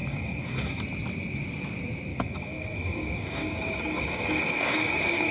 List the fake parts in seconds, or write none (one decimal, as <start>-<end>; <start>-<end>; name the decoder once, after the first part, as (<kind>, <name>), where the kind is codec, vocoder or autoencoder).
0.0-0.8 (codec, DAC); 2.1-5.3